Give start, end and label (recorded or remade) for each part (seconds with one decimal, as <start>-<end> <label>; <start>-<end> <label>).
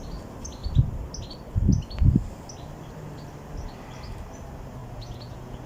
0.0-4.8 recorded; 4.8-5.7 remade